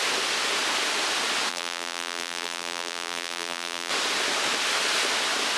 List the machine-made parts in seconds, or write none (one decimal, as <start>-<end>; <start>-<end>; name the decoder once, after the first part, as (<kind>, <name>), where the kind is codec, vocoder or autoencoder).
1.5-3.9 (vocoder, BigVGAN v2)